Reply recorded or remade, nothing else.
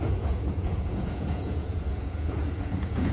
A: remade